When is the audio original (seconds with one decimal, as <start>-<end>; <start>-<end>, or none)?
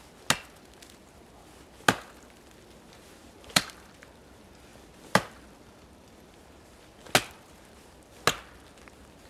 0.0-3.2; 3.9-4.7; 6.2-9.3